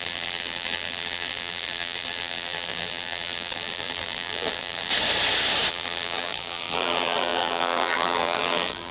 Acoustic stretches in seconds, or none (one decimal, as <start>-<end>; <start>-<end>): 4.9-5.7